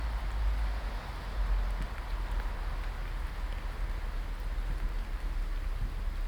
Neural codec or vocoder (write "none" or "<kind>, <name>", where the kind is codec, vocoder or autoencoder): none